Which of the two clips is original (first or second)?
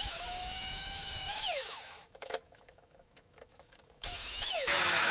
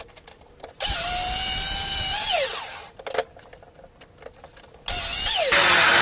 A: second